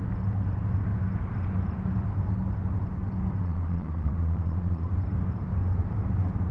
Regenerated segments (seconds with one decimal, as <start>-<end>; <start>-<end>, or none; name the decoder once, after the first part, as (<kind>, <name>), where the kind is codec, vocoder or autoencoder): 3.4-4.9 (vocoder, Vocos)